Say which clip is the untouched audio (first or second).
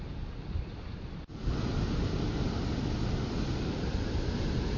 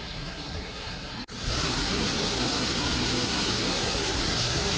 first